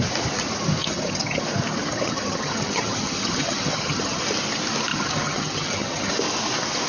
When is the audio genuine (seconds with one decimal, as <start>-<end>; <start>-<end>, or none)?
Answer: 0.0-0.8; 1.4-1.9; 4.2-4.9; 6.1-6.9